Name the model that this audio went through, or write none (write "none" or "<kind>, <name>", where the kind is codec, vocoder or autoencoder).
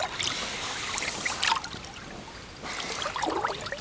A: none